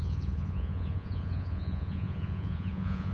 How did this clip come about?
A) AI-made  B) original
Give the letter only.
A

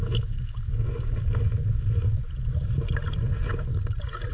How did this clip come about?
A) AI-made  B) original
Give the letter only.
B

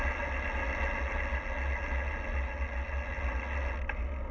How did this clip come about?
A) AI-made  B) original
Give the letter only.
B